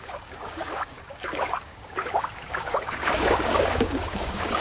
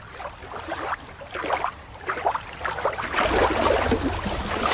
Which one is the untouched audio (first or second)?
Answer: second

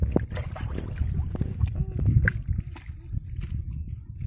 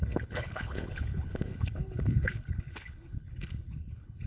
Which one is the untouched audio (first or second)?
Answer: first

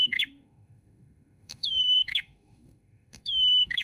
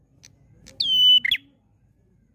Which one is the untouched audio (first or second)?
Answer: second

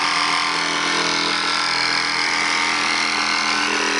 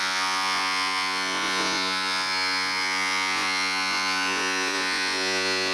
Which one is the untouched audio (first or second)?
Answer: first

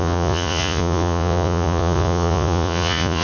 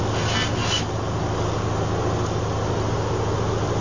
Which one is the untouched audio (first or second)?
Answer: second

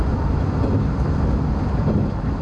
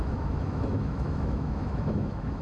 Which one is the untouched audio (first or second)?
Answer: first